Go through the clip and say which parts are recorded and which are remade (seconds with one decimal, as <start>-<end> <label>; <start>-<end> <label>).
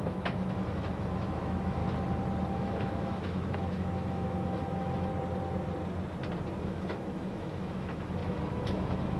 0.0-1.8 remade; 1.8-2.5 recorded; 2.5-5.1 remade; 5.1-6.6 recorded; 6.6-9.2 remade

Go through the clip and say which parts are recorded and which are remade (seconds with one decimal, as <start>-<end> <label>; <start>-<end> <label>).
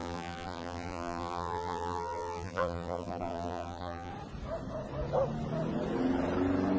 0.0-4.1 remade; 4.1-6.8 recorded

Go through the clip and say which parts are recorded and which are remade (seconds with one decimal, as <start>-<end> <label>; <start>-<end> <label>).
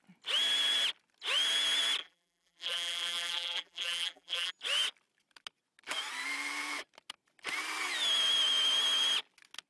0.0-2.0 recorded; 2.0-4.5 remade; 4.5-9.7 recorded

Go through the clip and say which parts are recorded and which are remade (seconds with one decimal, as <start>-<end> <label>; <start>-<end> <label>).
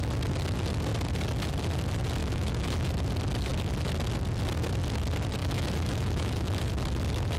0.0-2.2 recorded; 2.2-2.9 remade; 2.9-5.4 recorded; 5.4-6.7 remade; 6.7-7.4 recorded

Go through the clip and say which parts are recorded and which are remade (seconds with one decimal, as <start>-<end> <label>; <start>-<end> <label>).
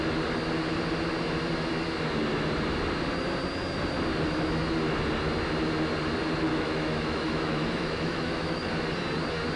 0.0-6.5 recorded; 6.5-8.7 remade; 8.7-9.6 recorded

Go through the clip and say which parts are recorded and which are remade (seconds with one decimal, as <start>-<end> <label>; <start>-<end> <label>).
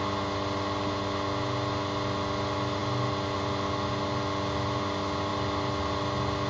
0.0-6.5 recorded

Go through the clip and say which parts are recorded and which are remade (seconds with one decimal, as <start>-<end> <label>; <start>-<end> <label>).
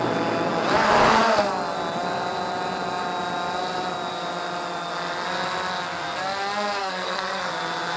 0.0-6.8 recorded; 6.8-7.5 remade; 7.5-8.0 recorded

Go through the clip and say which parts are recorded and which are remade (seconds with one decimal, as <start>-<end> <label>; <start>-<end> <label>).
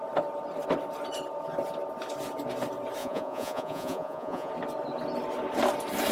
0.0-3.0 recorded; 3.0-4.5 remade; 4.5-6.1 recorded